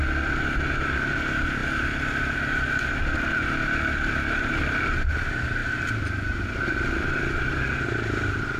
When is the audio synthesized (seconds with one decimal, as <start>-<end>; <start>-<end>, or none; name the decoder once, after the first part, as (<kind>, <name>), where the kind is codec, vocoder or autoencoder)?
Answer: none